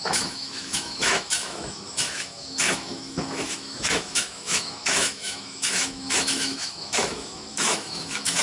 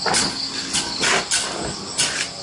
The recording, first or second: second